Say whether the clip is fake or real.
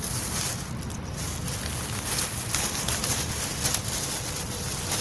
real